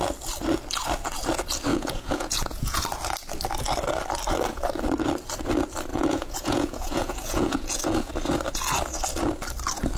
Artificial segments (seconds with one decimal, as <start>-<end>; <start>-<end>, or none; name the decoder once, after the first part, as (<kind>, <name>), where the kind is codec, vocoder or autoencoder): 1.7-2.8 (vocoder, Vocos); 5.9-8.1